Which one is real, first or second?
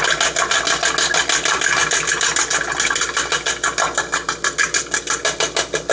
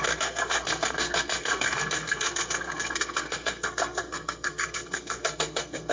first